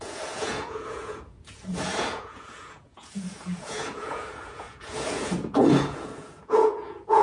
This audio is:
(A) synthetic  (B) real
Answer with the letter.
A